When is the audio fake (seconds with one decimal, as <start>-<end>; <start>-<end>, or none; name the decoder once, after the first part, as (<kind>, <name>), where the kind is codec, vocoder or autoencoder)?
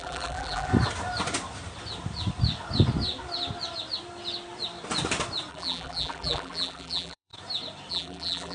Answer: 0.0-0.7 (vocoder, BigVGAN v2); 5.5-7.3; 7.9-8.5